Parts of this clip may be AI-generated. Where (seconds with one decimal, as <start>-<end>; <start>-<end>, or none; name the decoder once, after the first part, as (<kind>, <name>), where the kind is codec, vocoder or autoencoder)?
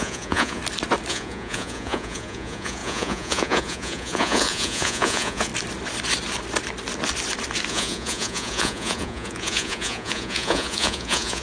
0.0-0.6 (vocoder, Vocos); 1.1-5.5; 7.7-11.4